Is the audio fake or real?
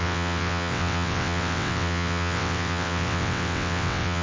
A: fake